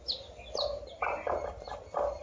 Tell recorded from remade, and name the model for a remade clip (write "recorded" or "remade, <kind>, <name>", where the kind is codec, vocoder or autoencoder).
recorded